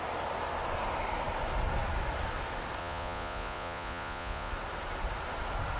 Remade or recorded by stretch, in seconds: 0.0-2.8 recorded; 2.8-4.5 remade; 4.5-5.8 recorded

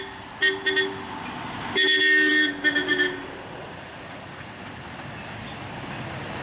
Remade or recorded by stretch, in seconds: 0.0-3.6 recorded; 3.6-4.5 remade; 4.5-6.4 recorded